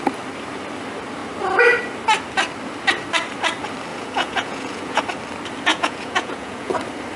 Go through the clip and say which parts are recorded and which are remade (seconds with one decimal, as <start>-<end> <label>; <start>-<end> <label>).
0.0-3.9 recorded; 3.9-5.0 remade; 5.0-5.7 recorded; 5.7-6.7 remade; 6.7-7.2 recorded